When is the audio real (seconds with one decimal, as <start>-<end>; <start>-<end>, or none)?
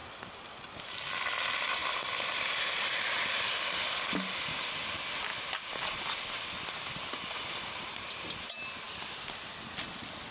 0.0-10.3